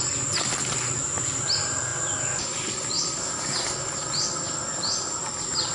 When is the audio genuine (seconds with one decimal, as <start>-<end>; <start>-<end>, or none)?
0.0-5.7